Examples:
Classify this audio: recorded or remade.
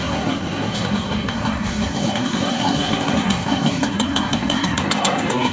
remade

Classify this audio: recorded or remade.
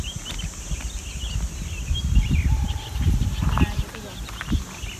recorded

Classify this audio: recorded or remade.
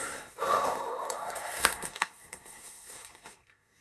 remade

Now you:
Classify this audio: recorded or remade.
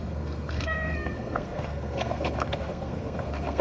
remade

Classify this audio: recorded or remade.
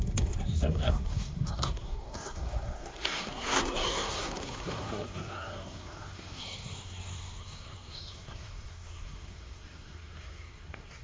remade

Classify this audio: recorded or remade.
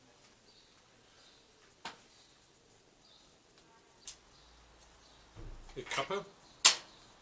recorded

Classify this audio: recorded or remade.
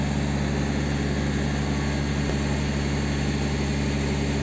recorded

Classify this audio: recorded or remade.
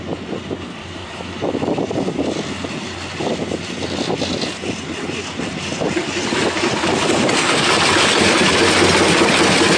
recorded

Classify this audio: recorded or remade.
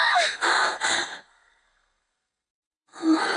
remade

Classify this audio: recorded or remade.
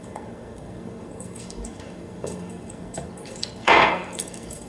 remade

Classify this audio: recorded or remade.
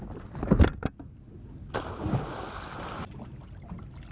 recorded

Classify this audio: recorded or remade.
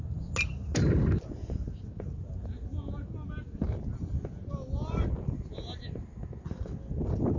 recorded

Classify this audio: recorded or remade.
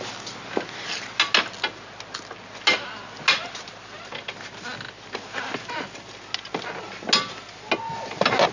recorded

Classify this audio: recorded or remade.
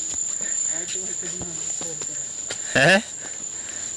recorded